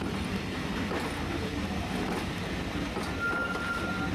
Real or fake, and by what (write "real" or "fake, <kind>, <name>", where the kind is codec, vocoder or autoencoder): real